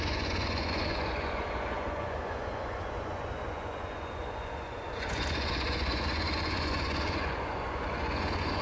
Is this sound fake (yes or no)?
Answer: yes